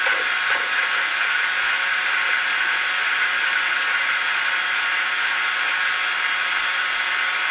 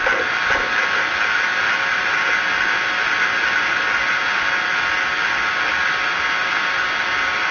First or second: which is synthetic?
first